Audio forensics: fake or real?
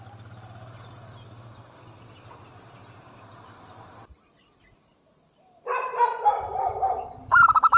real